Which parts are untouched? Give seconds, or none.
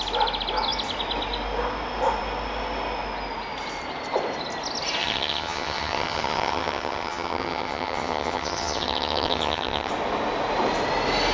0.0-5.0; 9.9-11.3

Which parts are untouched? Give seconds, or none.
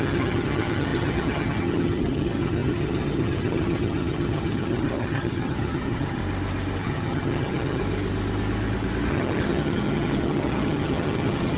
6.2-6.8; 7.8-9.1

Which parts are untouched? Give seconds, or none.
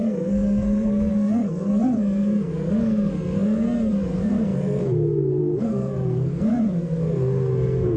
none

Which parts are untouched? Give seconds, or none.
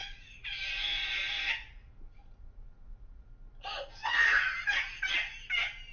3.3-4.0; 4.8-5.9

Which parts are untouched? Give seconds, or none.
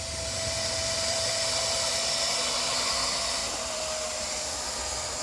0.0-0.8; 3.0-3.4; 4.4-5.2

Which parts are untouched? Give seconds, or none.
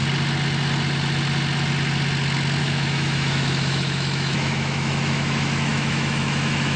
0.0-2.6